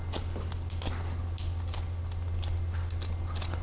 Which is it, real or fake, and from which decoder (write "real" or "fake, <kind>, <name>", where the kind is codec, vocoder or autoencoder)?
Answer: real